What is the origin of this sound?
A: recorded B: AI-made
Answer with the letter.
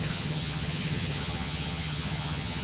B